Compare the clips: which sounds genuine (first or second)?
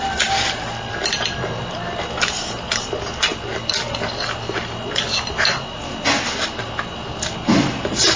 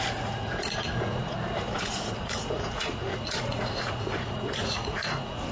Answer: first